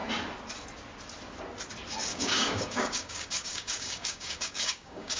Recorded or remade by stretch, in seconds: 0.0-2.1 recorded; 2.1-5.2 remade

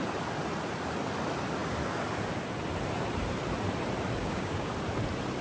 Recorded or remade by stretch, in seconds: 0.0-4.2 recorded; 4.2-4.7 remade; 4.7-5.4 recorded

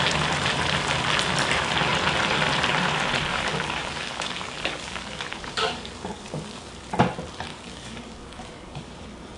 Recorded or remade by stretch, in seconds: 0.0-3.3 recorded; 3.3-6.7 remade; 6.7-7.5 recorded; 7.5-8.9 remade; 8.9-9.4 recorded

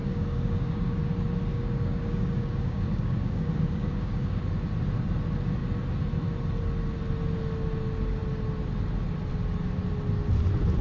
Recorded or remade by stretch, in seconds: 0.0-1.0 remade; 1.0-1.5 recorded; 1.5-4.4 remade; 4.4-10.8 recorded

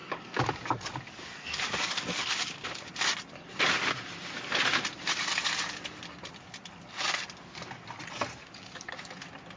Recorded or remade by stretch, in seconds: 0.0-2.9 remade; 2.9-8.4 recorded; 8.4-8.9 remade; 8.9-9.6 recorded

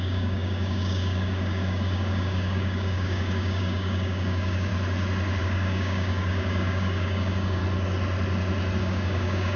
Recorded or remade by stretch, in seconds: 0.0-4.7 remade; 4.7-5.4 recorded; 5.4-7.6 remade; 7.6-8.8 recorded; 8.8-9.6 remade